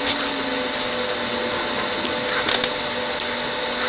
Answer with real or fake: real